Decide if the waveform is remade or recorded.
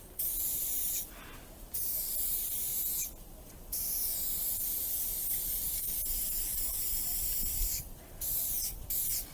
recorded